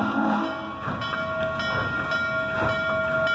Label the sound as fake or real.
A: real